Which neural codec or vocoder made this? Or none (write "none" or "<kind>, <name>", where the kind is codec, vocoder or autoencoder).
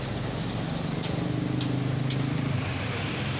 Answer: none